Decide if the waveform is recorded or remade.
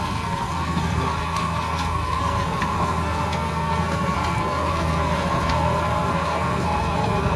remade